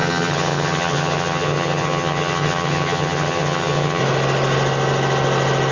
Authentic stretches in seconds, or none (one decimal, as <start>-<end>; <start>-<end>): 4.0-5.7